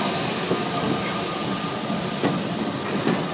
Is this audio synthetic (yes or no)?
no